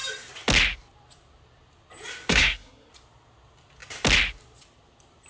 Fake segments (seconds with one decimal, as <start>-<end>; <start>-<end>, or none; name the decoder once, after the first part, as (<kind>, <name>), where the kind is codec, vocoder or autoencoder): 2.3-2.9 (codec, SNAC)